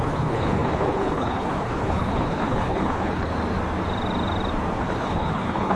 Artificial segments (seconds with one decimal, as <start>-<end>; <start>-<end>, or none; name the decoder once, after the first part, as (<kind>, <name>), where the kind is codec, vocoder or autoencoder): 0.0-3.3 (codec, HILCodec); 4.8-5.8